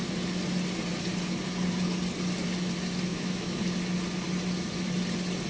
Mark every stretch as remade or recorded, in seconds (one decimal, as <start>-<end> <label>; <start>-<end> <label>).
0.0-3.1 recorded; 3.1-3.6 remade; 3.6-5.5 recorded